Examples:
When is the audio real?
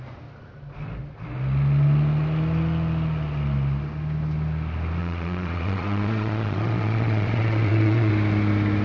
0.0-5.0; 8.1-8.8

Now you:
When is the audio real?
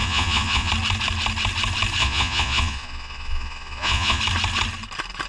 0.7-2.0; 4.2-5.3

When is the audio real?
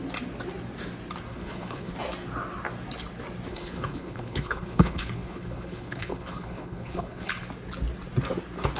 0.0-1.3; 1.9-3.5; 7.3-8.8